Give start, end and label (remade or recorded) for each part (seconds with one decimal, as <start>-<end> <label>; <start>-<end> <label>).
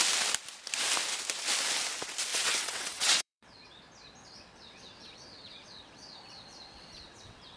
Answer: 0.0-2.3 recorded; 2.3-3.8 remade; 3.8-4.2 recorded; 4.2-7.6 remade